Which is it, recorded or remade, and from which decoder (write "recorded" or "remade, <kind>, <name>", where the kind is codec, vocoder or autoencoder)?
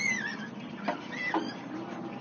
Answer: recorded